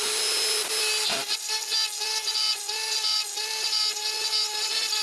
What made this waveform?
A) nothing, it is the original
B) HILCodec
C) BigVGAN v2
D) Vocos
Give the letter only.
A